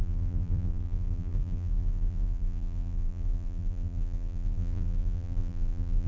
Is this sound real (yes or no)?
no